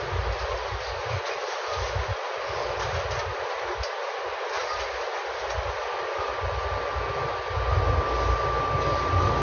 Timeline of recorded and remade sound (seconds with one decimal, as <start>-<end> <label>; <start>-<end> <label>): 0.0-9.4 recorded

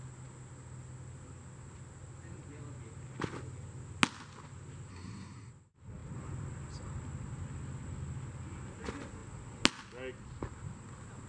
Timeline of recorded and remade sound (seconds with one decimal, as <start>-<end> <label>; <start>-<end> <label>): 0.0-4.9 recorded; 4.9-5.5 remade; 5.5-11.3 recorded